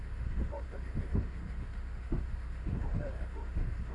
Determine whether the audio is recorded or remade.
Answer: remade